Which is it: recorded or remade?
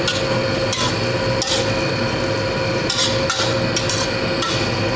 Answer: recorded